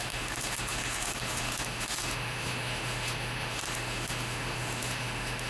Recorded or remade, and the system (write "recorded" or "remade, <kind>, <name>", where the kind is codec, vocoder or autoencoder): remade, autoencoder, DAC-VAE